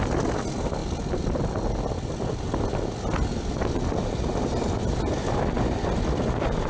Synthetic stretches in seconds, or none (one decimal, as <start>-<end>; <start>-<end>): none